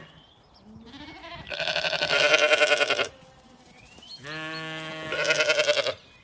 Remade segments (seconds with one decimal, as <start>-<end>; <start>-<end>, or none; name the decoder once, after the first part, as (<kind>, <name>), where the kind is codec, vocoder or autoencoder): none